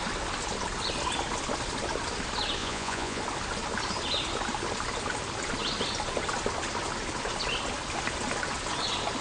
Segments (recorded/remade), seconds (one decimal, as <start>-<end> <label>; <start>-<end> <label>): 0.0-2.6 recorded; 2.6-3.2 remade; 3.2-9.2 recorded

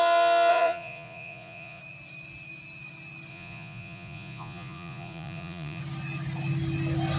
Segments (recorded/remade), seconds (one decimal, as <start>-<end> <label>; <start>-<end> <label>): 0.0-0.5 recorded; 0.5-1.8 remade; 1.8-3.3 recorded; 3.3-5.8 remade; 5.8-7.2 recorded

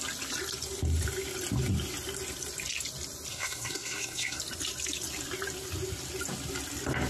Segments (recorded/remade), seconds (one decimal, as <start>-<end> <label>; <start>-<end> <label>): 0.0-3.3 recorded; 3.3-4.4 remade; 4.4-7.1 recorded

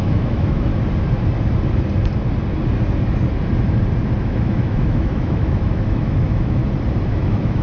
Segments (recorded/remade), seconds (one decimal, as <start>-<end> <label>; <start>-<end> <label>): 0.0-0.7 remade; 0.7-4.2 recorded; 4.2-6.6 remade; 6.6-7.1 recorded; 7.1-7.6 remade